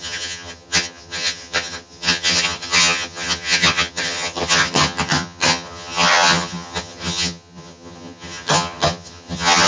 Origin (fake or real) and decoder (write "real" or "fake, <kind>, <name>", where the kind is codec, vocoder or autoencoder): fake, vocoder, HiFi-GAN